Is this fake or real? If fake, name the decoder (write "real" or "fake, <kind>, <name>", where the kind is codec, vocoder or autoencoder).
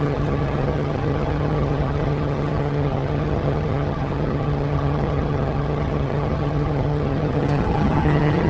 fake, vocoder, HiFi-GAN